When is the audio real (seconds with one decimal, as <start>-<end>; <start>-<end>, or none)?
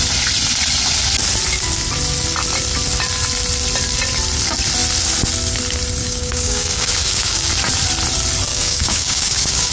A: 0.0-6.0; 7.5-8.5